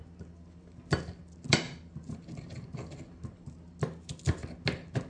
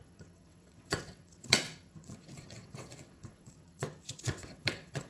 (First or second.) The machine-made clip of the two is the second